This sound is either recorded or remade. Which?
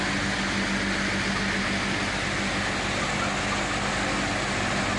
recorded